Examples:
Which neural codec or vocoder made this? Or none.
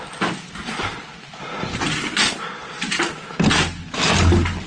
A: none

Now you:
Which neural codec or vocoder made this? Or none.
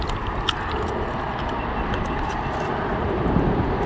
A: none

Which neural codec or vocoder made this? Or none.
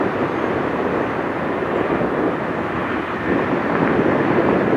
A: none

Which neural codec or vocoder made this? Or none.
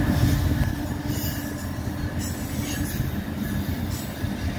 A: none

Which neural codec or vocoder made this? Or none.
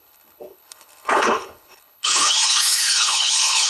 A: codec, HILCodec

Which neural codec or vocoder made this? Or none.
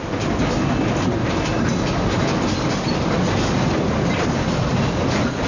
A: none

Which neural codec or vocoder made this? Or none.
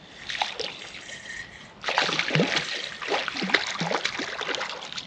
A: none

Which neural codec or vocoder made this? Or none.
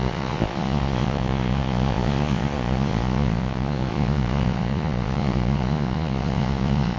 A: vocoder, Vocos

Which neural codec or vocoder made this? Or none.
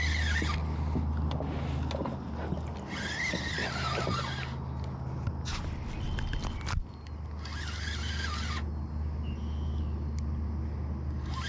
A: none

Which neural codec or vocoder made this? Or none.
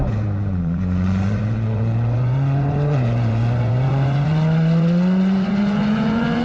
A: vocoder, Vocos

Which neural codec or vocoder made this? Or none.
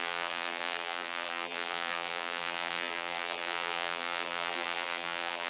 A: vocoder, BigVGAN v2